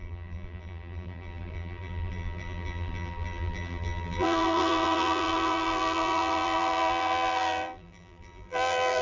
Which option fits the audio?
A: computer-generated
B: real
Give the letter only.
A